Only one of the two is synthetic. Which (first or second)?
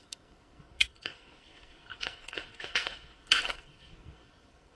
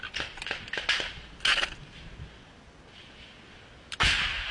first